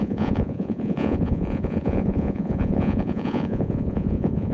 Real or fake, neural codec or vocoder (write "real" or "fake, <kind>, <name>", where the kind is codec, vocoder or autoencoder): fake, vocoder, Vocos